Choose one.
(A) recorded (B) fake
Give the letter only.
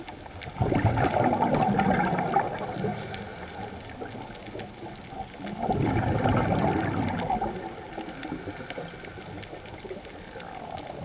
A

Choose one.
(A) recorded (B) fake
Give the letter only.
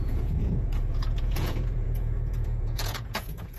B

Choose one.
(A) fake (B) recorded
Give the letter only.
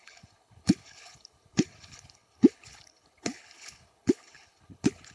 A